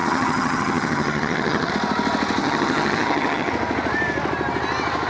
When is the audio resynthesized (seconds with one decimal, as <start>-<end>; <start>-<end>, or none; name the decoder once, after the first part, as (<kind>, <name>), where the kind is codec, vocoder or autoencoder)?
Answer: 0.0-1.7 (vocoder, HiFi-GAN); 2.4-3.5